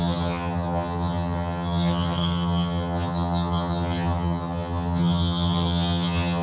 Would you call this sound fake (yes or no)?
yes